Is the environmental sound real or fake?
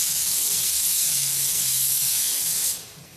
fake